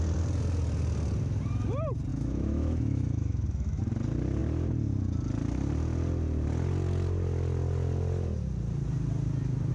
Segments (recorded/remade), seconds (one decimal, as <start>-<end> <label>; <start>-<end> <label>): 0.0-2.1 recorded; 2.1-3.8 remade; 3.8-9.7 recorded